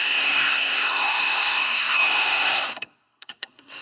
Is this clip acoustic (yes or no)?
no